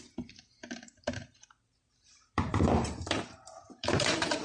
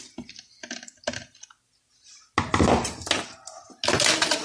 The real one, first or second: second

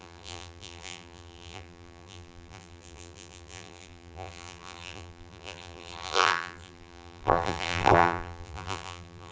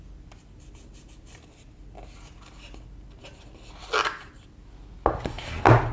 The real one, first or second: second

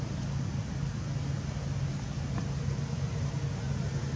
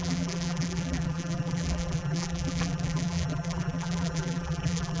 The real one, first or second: first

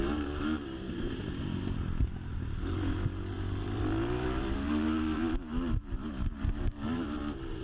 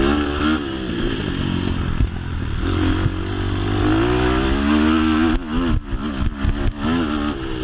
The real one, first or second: second